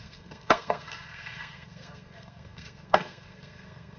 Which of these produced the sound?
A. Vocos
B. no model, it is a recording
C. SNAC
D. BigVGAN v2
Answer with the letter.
C